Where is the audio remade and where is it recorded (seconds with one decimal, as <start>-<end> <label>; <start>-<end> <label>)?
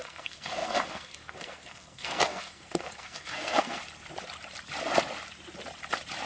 0.0-3.8 remade; 3.8-6.3 recorded